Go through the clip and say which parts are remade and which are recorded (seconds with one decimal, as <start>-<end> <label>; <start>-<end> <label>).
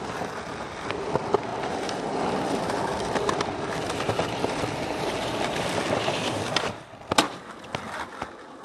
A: 0.0-1.5 recorded; 1.5-6.1 remade; 6.1-8.6 recorded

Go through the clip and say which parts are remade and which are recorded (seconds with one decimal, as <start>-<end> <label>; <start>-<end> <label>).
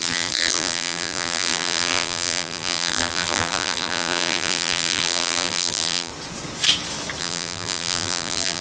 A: 0.0-6.1 remade; 6.1-7.2 recorded; 7.2-8.6 remade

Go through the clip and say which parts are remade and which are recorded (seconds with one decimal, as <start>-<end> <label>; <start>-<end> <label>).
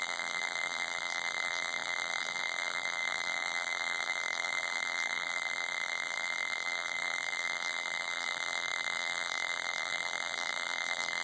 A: 0.0-11.2 remade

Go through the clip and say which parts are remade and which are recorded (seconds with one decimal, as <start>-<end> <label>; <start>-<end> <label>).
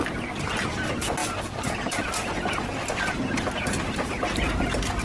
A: 0.0-5.0 recorded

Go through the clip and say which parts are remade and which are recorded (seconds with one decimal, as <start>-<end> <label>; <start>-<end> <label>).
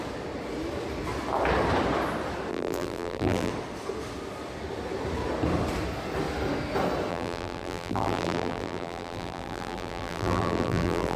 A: 0.0-2.5 recorded; 2.5-3.5 remade; 3.5-7.1 recorded; 7.1-11.2 remade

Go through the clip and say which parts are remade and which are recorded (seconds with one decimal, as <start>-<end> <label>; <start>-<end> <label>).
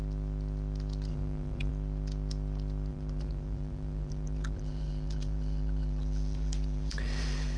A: 0.0-1.1 recorded; 1.1-1.7 remade; 1.7-2.9 recorded; 2.9-7.6 remade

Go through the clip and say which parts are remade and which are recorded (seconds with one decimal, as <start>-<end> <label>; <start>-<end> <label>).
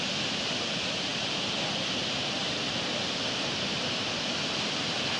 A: 0.0-5.2 recorded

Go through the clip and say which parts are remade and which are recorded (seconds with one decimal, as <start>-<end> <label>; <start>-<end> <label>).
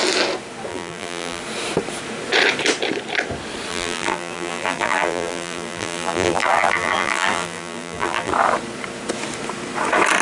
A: 0.0-0.7 recorded; 0.7-1.4 remade; 1.4-3.7 recorded; 3.7-8.3 remade; 8.3-10.2 recorded